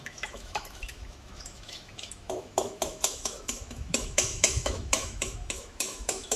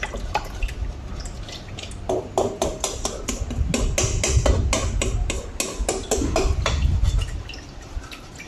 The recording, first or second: second